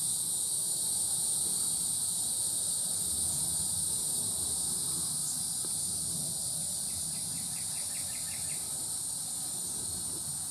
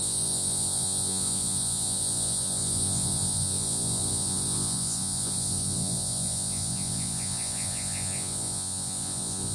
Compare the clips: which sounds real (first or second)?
first